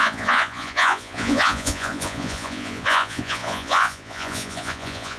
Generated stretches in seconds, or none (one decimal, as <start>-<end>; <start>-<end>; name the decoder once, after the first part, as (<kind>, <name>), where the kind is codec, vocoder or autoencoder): 0.0-5.2 (vocoder, Vocos)